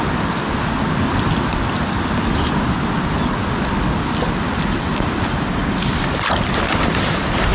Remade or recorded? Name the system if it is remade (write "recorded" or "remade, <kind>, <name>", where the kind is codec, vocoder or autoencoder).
recorded